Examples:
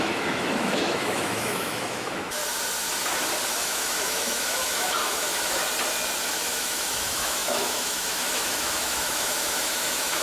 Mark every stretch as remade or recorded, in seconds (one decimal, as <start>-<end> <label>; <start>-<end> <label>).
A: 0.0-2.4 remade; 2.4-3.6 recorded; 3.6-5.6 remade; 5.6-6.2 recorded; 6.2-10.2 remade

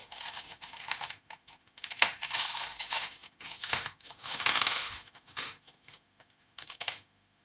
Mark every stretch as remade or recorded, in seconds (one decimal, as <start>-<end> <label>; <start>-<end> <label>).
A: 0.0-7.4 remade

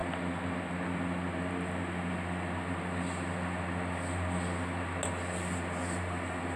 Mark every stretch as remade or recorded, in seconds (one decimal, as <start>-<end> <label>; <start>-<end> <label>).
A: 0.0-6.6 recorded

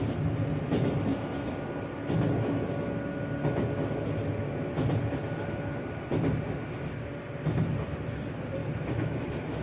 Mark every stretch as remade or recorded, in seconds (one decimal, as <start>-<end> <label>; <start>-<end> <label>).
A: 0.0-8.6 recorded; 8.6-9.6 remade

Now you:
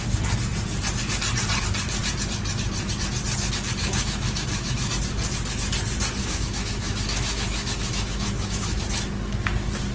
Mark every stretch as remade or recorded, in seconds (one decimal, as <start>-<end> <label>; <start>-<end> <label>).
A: 0.0-3.8 recorded; 3.8-4.9 remade; 4.9-6.2 recorded; 6.2-8.8 remade; 8.8-9.9 recorded